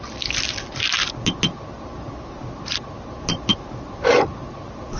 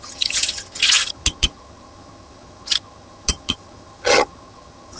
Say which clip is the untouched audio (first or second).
first